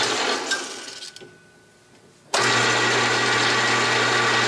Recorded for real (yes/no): yes